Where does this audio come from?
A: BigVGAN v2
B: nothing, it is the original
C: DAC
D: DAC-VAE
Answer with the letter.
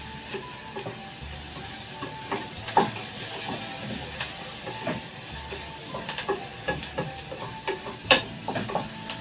A